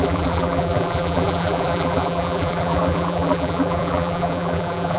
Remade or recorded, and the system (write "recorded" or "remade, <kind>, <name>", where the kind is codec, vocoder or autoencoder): remade, vocoder, BigVGAN v2